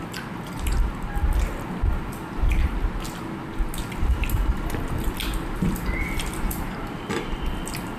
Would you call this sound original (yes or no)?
yes